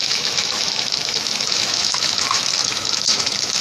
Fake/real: fake